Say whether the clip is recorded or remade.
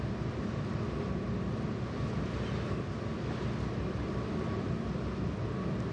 recorded